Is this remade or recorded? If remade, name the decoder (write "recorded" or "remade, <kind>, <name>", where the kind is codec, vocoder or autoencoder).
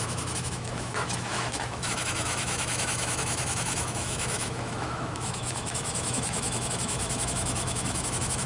remade, autoencoder, DAC-VAE